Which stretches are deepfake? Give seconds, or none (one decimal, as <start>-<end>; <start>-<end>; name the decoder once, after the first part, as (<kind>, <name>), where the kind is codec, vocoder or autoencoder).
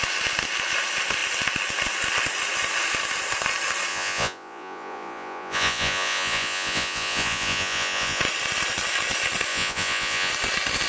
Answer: 3.9-8.2 (vocoder, Vocos); 9.5-10.3